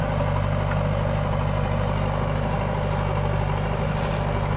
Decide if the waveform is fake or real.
real